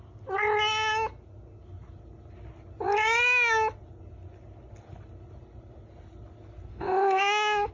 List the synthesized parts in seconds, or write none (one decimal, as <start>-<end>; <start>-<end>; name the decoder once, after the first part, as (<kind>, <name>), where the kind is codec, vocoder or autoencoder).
6.7-7.7 (autoencoder, DAC-VAE)